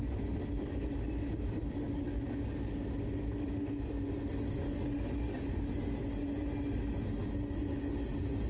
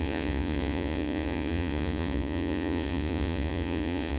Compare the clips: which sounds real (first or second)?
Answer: first